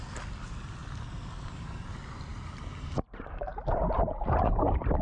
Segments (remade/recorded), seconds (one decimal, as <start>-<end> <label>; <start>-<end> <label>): 0.0-2.3 recorded; 2.3-3.5 remade; 3.5-5.0 recorded